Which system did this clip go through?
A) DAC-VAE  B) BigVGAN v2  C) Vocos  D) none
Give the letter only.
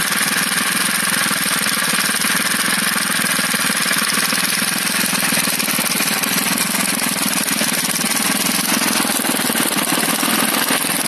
D